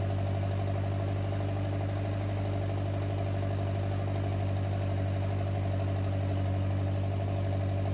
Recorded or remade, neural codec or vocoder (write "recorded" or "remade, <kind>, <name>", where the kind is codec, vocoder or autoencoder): recorded